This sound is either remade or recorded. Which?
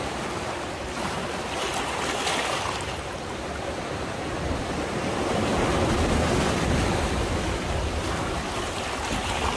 recorded